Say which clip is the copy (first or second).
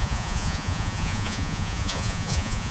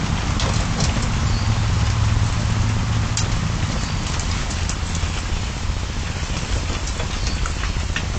first